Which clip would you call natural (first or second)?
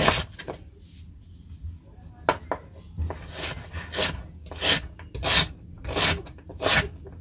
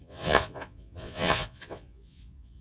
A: first